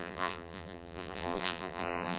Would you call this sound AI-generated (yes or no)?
yes